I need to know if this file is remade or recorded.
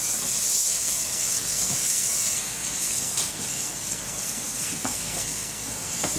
remade